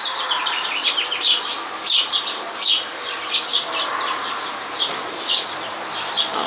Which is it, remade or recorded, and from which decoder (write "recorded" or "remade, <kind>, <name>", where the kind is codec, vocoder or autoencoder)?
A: remade, vocoder, BigVGAN v2